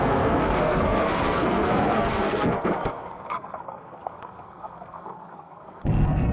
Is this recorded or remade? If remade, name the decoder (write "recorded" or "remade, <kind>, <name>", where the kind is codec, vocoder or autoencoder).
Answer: remade, codec, SNAC